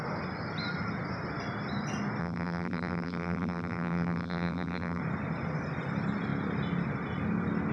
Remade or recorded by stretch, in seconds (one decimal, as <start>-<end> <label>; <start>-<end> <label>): 0.0-2.2 recorded; 2.2-5.0 remade; 5.0-7.7 recorded